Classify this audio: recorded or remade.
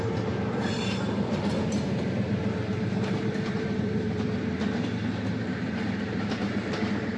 remade